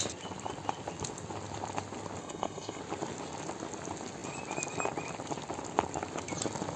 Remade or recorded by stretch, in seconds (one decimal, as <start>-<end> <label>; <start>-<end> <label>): 0.0-2.2 recorded; 2.2-2.8 remade; 2.8-6.8 recorded